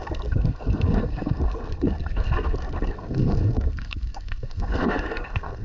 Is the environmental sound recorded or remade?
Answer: remade